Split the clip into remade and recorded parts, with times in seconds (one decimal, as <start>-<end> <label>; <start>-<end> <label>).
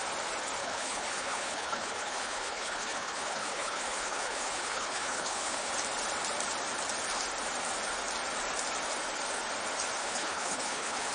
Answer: 0.0-0.6 recorded; 0.6-5.7 remade; 5.7-10.0 recorded; 10.0-11.1 remade